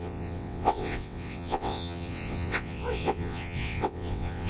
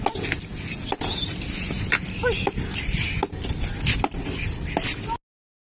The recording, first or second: second